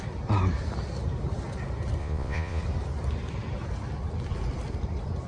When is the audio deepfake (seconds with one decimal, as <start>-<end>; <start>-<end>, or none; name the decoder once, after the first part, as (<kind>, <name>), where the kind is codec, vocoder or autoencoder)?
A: 2.0-2.6 (vocoder, Vocos)